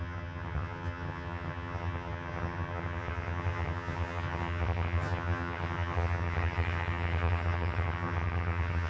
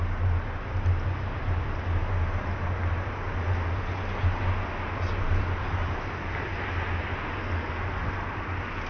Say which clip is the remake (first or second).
first